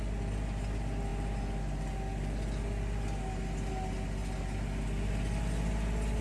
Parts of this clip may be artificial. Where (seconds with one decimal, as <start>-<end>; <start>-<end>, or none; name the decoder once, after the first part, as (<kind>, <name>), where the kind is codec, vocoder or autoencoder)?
none